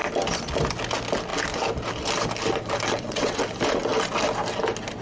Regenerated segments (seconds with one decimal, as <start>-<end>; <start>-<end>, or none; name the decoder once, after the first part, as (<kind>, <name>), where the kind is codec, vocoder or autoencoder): 2.9-3.4 (vocoder, WaveNeXt)